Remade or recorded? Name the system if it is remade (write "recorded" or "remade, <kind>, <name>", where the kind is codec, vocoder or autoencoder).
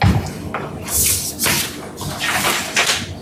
recorded